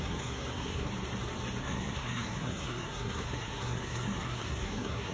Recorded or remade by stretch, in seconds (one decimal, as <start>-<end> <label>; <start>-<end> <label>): 0.0-0.9 remade; 0.9-1.6 recorded; 1.6-5.1 remade